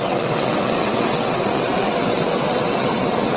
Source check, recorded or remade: remade